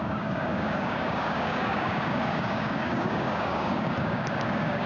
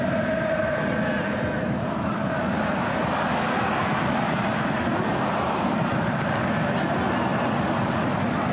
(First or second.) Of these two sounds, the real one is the second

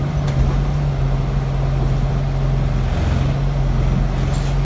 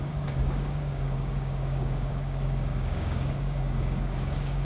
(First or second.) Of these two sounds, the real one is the first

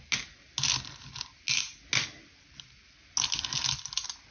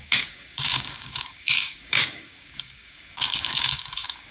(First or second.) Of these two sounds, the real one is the first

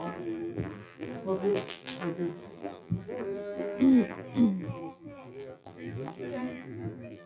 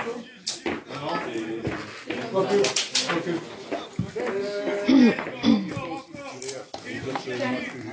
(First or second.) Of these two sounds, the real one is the second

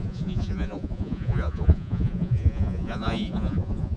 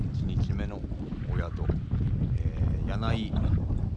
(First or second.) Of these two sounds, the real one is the second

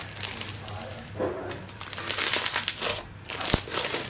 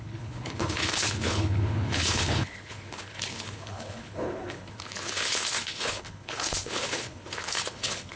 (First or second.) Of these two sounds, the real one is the first